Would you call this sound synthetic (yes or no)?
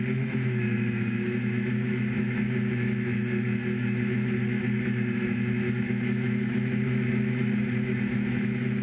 yes